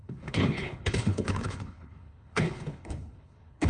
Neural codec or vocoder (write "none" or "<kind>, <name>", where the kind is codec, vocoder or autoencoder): codec, HILCodec